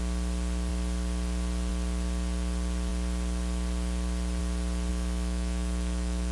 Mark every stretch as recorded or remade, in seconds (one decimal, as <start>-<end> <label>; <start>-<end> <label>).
0.0-4.9 recorded; 4.9-6.3 remade